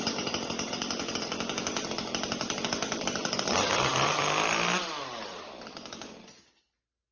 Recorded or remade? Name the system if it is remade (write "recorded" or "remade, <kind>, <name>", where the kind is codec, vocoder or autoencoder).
recorded